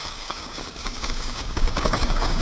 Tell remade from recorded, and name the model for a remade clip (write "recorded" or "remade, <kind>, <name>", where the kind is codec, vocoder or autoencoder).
remade, codec, DAC